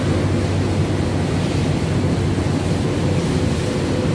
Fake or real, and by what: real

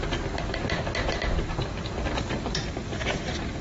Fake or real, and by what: real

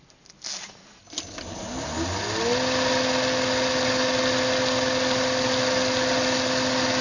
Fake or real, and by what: real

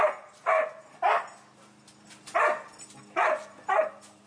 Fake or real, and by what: real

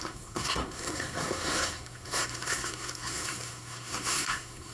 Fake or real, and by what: fake, codec, SNAC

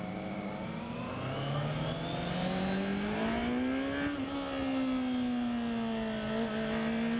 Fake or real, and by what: real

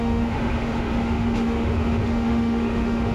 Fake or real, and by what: fake, autoencoder, DAC-VAE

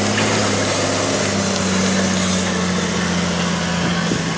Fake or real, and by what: real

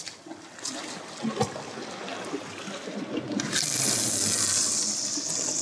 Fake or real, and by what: real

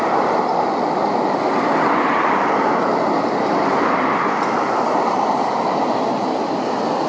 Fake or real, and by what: real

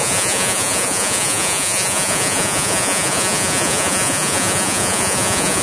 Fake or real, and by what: fake, vocoder, Vocos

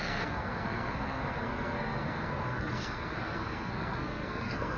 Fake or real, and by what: fake, codec, SNAC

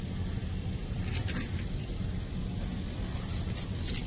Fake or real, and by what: real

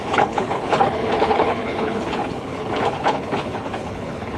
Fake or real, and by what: fake, codec, HILCodec